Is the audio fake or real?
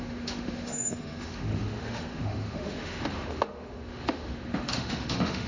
fake